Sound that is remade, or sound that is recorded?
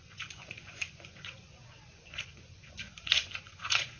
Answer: remade